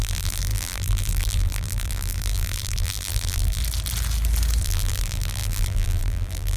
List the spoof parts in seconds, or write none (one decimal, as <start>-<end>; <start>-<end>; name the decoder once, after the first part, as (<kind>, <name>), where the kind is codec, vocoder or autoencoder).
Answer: 0.0-3.6 (vocoder, BigVGAN v2); 4.6-6.6